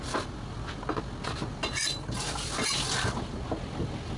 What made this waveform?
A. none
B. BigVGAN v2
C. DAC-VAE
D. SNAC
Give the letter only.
A